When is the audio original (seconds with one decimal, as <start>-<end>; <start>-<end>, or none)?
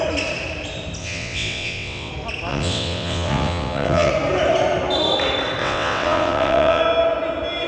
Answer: 0.0-1.0; 2.1-2.5; 4.1-5.6; 6.8-7.7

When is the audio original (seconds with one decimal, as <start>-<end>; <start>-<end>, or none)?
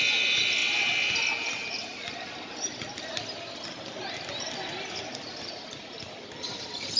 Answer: 0.0-7.0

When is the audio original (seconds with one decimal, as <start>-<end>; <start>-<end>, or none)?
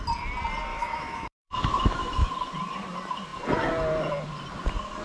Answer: 0.0-0.7; 2.3-5.0